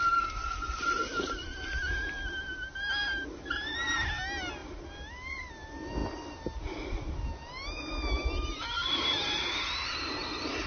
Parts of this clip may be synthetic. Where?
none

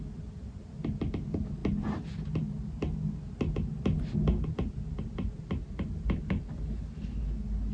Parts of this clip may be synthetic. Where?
none

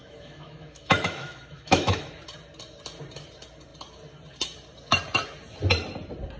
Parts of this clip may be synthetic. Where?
0.0-2.1 (autoencoder, DAC-VAE)